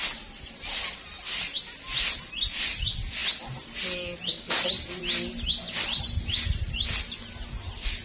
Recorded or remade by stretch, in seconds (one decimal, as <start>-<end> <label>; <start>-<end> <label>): 0.0-8.0 recorded

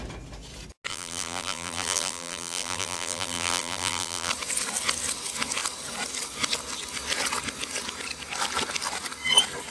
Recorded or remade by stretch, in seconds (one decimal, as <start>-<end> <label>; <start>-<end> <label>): 0.0-0.9 recorded; 0.9-4.3 remade; 4.3-9.7 recorded

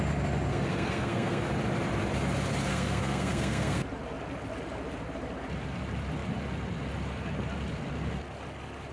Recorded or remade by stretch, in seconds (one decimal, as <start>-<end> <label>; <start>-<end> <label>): 0.0-0.5 recorded; 0.5-1.4 remade; 1.4-2.7 recorded; 2.7-3.8 remade; 3.8-8.9 recorded

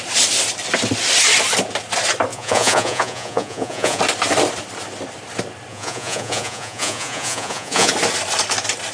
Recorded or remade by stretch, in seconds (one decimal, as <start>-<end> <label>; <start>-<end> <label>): 0.0-2.3 recorded; 2.3-4.0 remade; 4.0-5.7 recorded; 5.7-7.9 remade; 7.9-8.9 recorded

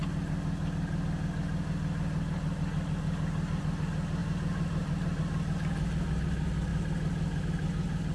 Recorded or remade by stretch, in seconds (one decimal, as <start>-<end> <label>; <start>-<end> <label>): 0.0-4.2 recorded; 4.2-5.2 remade; 5.2-8.1 recorded

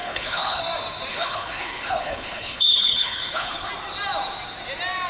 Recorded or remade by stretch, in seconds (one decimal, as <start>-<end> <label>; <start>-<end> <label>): 0.0-0.6 remade; 0.6-1.1 recorded; 1.1-3.7 remade; 3.7-5.1 recorded

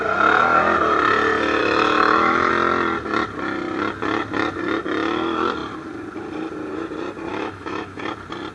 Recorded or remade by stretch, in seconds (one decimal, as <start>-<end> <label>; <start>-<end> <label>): 0.0-1.6 recorded; 1.6-2.5 remade; 2.5-7.3 recorded; 7.3-8.0 remade; 8.0-8.5 recorded

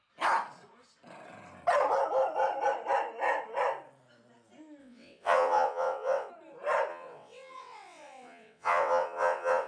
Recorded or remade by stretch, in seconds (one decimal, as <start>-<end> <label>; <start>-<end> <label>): 0.0-4.8 recorded; 4.8-6.3 remade; 6.3-6.9 recorded; 6.9-9.7 remade